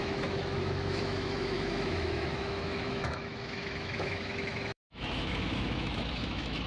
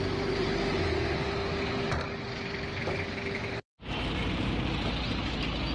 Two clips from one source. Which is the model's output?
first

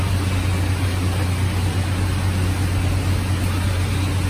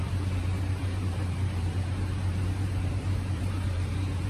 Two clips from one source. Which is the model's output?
second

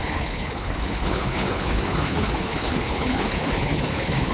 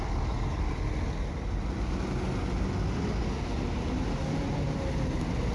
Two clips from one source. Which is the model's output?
first